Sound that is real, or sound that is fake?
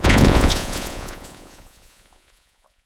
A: fake